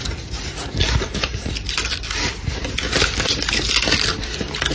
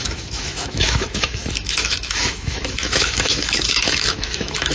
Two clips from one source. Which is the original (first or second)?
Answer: first